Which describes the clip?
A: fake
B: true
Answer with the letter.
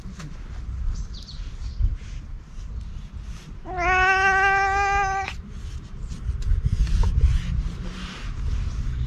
B